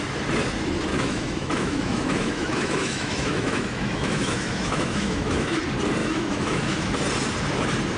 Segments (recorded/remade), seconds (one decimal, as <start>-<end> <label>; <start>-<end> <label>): 0.0-0.9 recorded; 0.9-5.6 remade; 5.6-6.0 recorded; 6.0-6.9 remade; 6.9-8.0 recorded